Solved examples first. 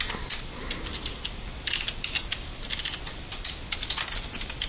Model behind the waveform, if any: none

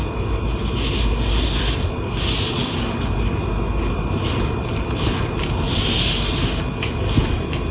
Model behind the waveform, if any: none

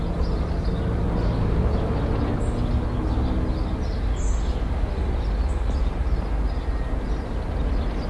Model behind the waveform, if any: none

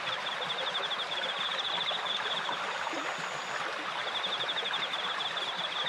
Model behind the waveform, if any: vocoder, BigVGAN v2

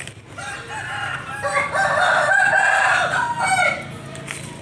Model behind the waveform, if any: none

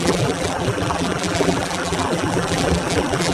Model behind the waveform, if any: vocoder, BigVGAN v2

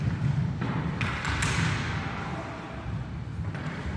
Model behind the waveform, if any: none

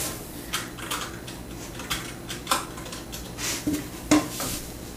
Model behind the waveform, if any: none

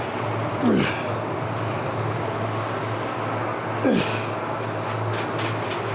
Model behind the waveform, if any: none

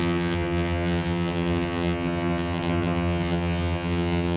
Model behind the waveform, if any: vocoder, HiFi-GAN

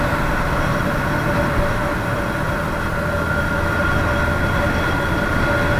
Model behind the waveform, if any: none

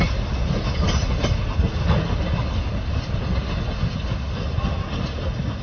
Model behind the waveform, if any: none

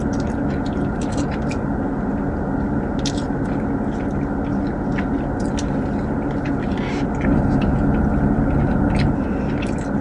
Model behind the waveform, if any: none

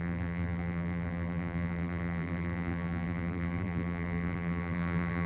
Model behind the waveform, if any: vocoder, BigVGAN v2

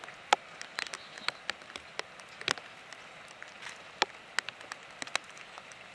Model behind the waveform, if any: none